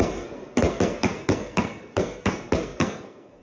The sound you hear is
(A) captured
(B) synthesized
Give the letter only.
B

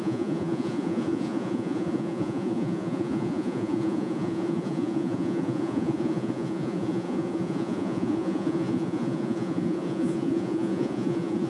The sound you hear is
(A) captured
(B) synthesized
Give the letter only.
B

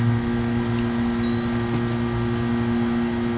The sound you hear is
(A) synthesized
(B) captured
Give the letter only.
B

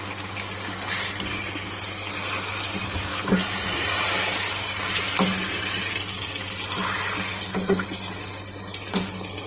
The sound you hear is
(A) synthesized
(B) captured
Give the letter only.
B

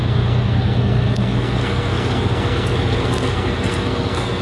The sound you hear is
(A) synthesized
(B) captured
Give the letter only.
A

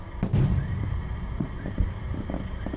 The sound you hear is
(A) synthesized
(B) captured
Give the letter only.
B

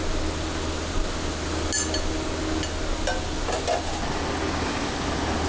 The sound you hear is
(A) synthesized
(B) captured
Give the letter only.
B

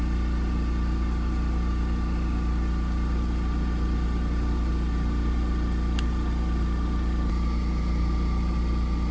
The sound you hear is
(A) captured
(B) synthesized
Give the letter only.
A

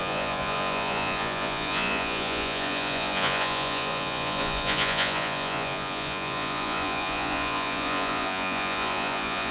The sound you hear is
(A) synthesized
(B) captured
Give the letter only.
A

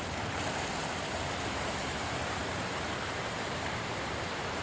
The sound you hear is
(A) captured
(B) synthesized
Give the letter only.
B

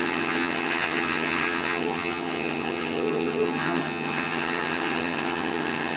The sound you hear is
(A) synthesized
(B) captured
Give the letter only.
A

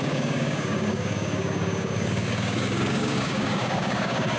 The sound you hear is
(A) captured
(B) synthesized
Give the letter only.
B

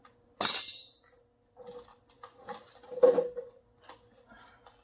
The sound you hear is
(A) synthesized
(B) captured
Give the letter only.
B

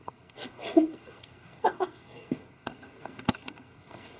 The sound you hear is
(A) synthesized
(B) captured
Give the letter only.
A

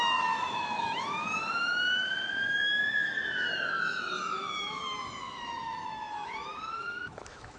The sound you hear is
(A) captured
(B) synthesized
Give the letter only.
B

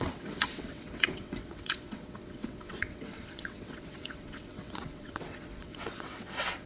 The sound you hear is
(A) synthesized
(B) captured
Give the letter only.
A